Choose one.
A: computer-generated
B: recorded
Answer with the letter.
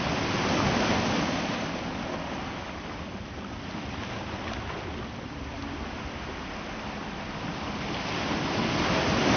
A